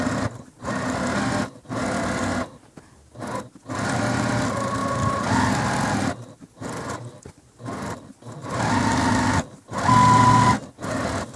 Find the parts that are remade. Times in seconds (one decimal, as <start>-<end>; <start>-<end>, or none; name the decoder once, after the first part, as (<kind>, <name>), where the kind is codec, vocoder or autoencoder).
none